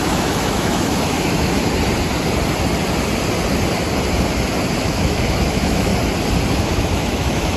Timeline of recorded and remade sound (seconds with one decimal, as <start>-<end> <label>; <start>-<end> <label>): 0.0-1.6 remade; 1.6-4.8 recorded; 4.8-5.9 remade; 5.9-6.6 recorded; 6.6-7.6 remade